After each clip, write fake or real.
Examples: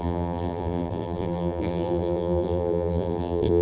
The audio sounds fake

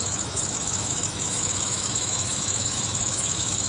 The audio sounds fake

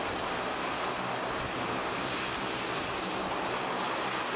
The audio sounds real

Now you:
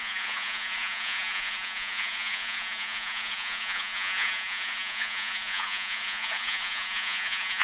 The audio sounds fake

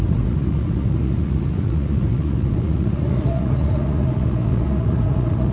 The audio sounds fake